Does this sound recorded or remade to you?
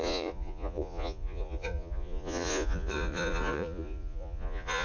remade